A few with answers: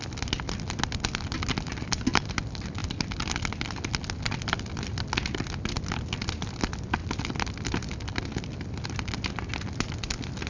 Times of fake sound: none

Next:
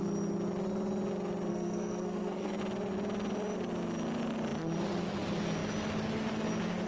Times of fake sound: 1.5-2.6 (codec, SNAC)

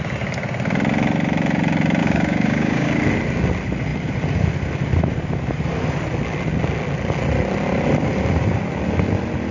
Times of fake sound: 2.0-2.9 (codec, DAC)